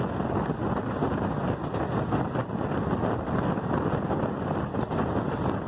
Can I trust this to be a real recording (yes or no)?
yes